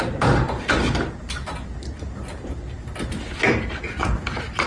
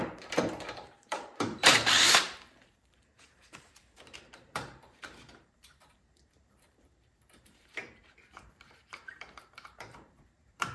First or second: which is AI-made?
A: second